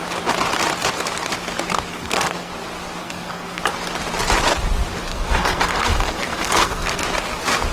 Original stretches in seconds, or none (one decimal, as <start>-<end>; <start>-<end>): 0.0-1.9; 2.5-3.0; 3.6-5.1; 7.0-7.7